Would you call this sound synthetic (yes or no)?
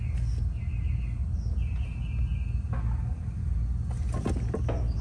no